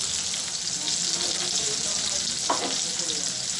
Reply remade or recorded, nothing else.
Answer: recorded